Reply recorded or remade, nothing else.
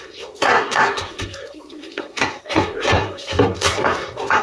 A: remade